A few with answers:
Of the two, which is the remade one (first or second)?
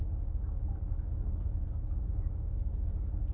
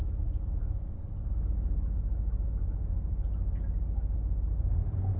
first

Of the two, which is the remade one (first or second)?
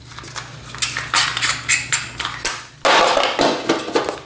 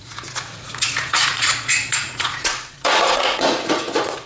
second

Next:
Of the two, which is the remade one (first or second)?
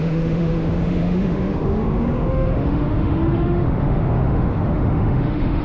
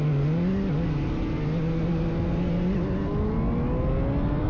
first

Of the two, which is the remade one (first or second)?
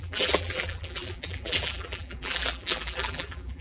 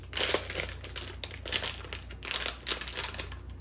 first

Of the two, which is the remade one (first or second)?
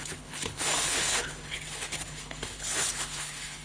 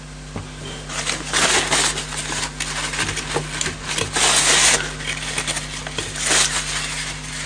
first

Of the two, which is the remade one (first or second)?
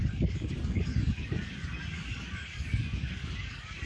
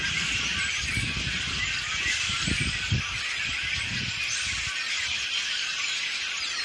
first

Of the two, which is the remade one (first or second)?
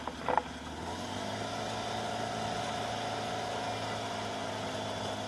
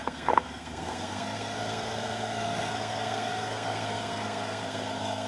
second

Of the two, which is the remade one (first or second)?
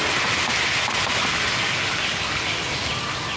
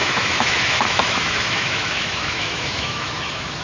second